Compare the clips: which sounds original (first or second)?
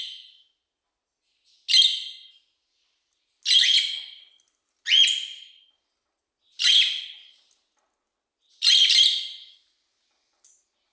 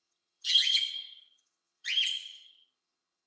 first